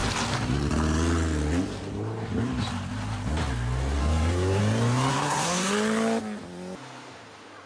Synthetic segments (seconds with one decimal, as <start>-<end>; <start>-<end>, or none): 4.0-4.6; 5.1-5.7